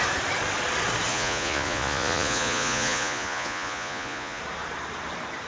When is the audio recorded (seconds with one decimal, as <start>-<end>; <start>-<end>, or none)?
0.0-1.1; 4.4-5.5